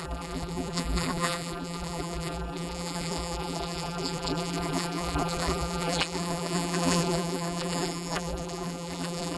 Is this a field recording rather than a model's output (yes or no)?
no